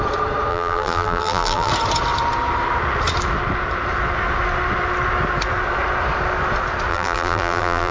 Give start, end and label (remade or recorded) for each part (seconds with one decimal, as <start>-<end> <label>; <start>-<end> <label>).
0.0-0.5 recorded; 0.5-1.7 remade; 1.7-6.9 recorded; 6.9-7.9 remade